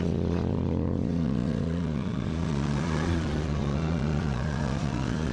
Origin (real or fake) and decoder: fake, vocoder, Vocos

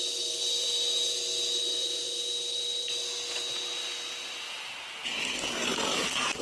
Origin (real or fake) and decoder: real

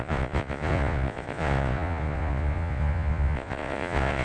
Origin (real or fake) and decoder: fake, vocoder, Vocos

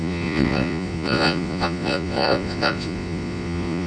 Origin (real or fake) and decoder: fake, vocoder, Vocos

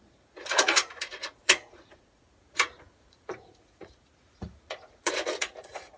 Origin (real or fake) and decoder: fake, vocoder, Vocos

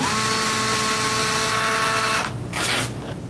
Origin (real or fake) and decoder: real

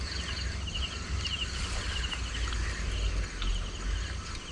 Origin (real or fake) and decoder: real